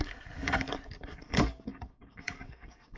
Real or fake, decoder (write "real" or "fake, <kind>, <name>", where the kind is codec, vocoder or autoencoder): fake, codec, DAC